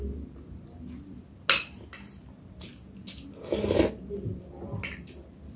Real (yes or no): yes